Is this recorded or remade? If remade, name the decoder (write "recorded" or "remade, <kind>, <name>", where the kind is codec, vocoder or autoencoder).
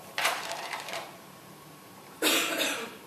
remade, vocoder, BigVGAN v2